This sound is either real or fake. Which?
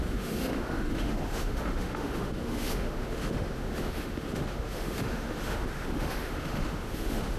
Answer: fake